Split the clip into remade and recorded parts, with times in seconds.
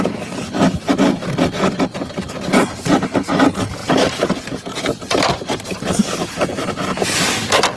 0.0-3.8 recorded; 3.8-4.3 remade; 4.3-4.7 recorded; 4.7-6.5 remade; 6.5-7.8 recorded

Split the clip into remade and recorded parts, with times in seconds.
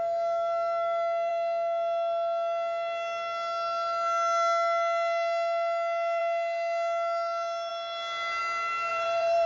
0.0-8.9 recorded; 8.9-9.5 remade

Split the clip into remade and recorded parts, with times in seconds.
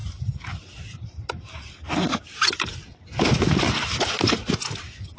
0.0-2.7 remade; 2.7-5.2 recorded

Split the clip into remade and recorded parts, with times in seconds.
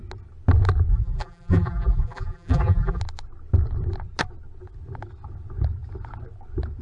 0.0-0.9 recorded; 0.9-3.0 remade; 3.0-6.8 recorded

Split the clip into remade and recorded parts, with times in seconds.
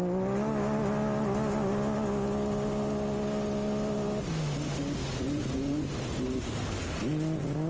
0.0-5.1 recorded; 5.1-7.0 remade; 7.0-7.7 recorded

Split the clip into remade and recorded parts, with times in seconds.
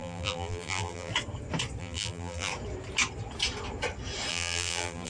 0.0-1.1 remade; 1.1-1.8 recorded; 1.8-2.5 remade; 2.5-4.3 recorded; 4.3-5.1 remade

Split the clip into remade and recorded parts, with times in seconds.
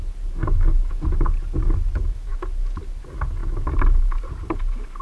0.0-5.0 recorded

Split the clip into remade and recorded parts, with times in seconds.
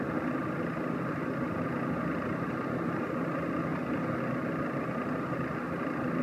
0.0-3.7 recorded; 3.7-4.2 remade; 4.2-6.2 recorded